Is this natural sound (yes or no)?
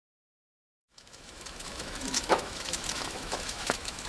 no